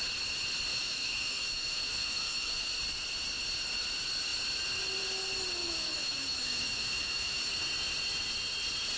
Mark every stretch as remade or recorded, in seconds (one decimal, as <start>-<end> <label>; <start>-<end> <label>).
0.0-0.7 recorded; 0.7-2.8 remade; 2.8-5.6 recorded; 5.6-7.4 remade; 7.4-9.0 recorded